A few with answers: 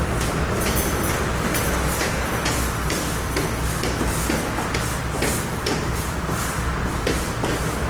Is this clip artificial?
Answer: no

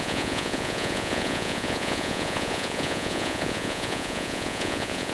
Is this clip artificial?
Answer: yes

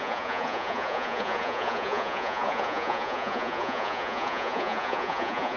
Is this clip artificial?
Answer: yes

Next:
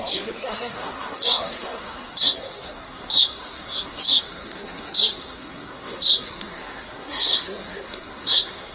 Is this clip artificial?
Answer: yes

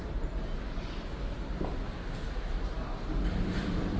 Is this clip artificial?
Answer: no